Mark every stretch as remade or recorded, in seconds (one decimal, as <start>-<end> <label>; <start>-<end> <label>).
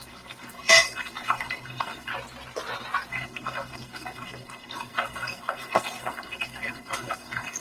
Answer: 0.0-2.1 remade; 2.1-3.1 recorded; 3.1-7.6 remade